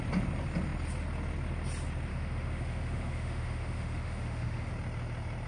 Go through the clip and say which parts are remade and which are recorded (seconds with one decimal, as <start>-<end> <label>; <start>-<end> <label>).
0.0-2.1 recorded; 2.1-4.7 remade; 4.7-5.5 recorded